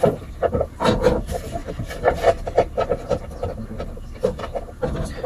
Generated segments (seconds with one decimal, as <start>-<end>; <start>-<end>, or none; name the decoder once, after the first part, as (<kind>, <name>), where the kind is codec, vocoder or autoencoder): 0.0-1.6 (vocoder, BigVGAN v2); 4.8-5.3